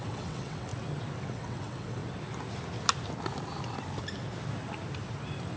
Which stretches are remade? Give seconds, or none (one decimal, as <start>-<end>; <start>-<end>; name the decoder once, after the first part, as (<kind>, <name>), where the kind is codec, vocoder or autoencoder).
0.0-0.7 (vocoder, WaveNeXt); 1.3-2.0